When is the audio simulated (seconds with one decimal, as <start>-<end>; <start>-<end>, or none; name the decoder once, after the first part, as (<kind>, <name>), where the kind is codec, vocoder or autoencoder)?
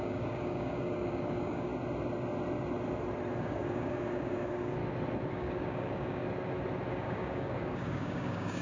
0.0-1.7 (codec, DAC); 3.4-4.8; 5.3-6.2; 6.9-8.6